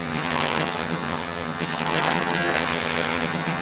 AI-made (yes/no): yes